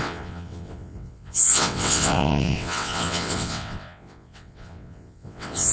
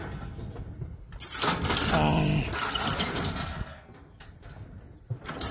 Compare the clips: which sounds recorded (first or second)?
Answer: second